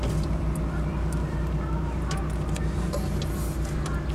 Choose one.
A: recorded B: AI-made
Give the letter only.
A